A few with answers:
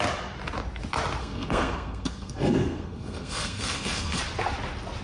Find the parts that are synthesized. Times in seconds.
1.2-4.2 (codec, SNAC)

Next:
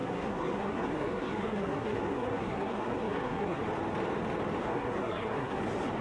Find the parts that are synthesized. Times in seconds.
0.0-3.6 (codec, SNAC); 4.6-5.6

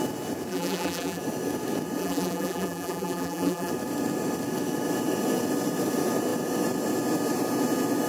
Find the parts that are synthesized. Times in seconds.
0.5-1.2 (vocoder, BigVGAN v2); 2.0-3.7

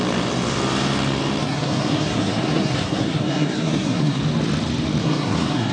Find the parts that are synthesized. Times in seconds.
1.4-4.2 (codec, SNAC); 5.0-5.7